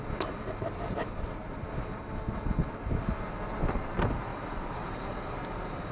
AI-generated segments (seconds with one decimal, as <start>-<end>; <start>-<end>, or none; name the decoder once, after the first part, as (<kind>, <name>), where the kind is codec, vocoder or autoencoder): 4.3-5.9 (vocoder, BigVGAN v2)